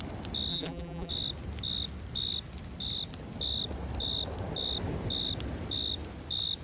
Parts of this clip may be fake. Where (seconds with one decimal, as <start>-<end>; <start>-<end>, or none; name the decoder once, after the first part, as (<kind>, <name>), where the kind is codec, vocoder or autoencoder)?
0.5-1.1 (vocoder, BigVGAN v2)